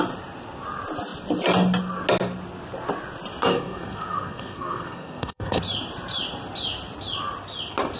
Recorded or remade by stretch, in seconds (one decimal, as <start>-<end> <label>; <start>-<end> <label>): 0.0-3.5 recorded; 3.5-5.6 remade; 5.6-8.0 recorded